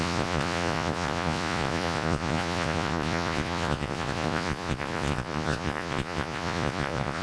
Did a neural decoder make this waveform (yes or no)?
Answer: yes